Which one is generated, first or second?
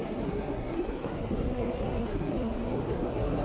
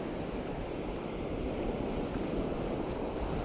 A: first